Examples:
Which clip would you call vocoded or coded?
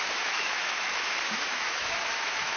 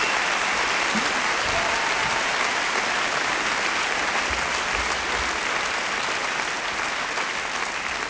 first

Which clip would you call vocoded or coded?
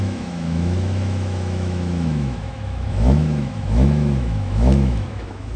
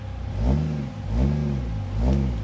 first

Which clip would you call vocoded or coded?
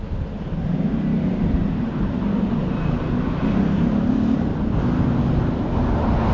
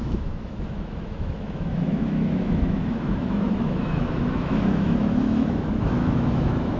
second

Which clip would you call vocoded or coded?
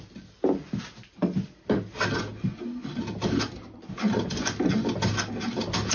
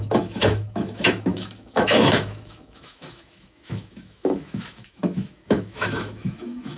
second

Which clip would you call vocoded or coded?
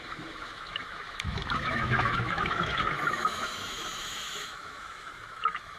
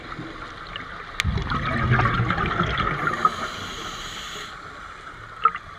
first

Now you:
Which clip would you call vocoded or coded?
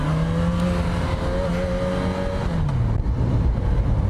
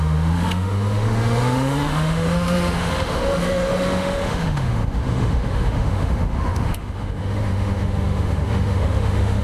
second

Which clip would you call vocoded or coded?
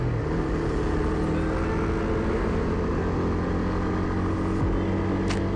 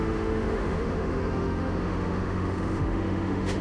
second